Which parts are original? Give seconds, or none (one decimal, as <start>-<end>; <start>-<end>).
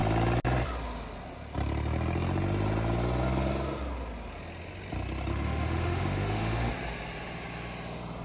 0.0-5.3; 6.7-8.2